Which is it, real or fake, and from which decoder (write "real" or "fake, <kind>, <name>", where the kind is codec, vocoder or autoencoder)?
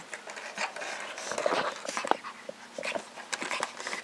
real